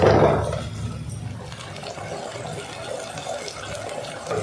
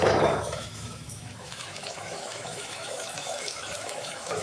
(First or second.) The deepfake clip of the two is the second